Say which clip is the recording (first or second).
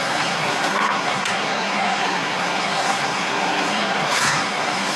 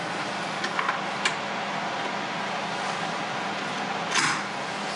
second